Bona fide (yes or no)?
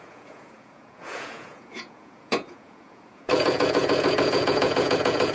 no